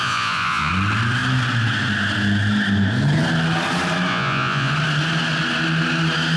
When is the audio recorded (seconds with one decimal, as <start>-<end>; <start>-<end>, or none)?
0.7-4.1; 4.7-6.4